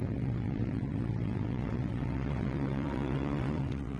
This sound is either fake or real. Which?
fake